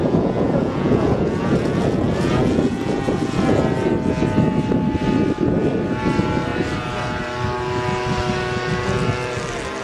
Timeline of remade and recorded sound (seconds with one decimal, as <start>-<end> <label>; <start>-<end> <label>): 0.0-3.6 remade; 3.6-9.8 recorded